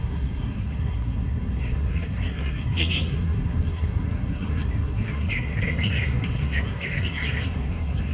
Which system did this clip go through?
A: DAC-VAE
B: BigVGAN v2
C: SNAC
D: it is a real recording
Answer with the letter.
C